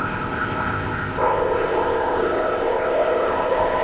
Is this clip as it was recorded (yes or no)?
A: no